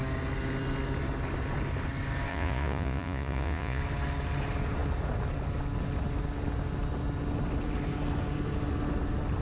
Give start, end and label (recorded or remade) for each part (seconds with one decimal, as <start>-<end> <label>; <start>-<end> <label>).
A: 0.0-2.3 recorded; 2.3-3.8 remade; 3.8-9.4 recorded